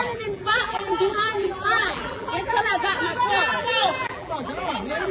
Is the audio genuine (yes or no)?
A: no